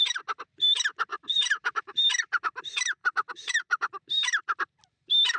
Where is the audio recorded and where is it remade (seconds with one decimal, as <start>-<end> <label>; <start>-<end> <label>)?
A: 0.0-1.1 recorded; 1.1-2.2 remade; 2.2-3.0 recorded; 3.0-3.5 remade; 3.5-5.4 recorded